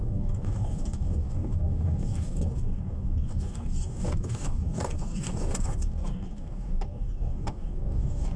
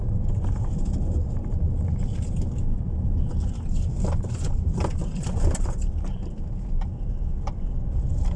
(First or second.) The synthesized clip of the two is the first